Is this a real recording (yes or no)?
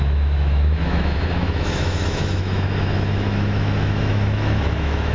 no